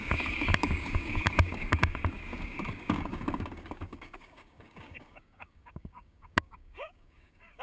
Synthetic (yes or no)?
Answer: yes